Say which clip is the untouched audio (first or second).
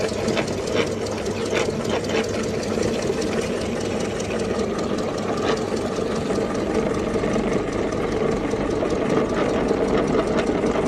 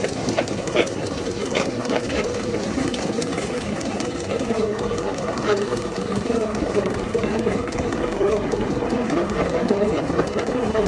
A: first